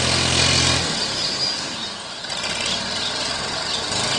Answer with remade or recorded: recorded